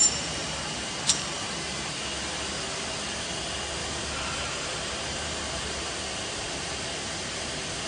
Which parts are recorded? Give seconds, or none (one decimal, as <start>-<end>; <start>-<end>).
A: 1.4-3.8; 7.4-7.9